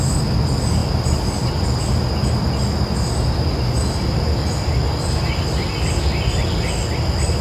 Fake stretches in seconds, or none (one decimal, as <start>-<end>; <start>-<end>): none